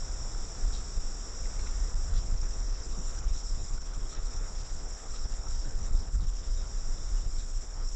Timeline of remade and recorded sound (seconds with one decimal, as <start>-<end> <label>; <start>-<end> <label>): 0.0-2.1 recorded; 2.1-6.7 remade; 6.7-7.2 recorded; 7.2-8.0 remade